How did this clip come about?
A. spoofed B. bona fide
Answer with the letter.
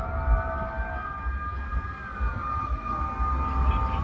B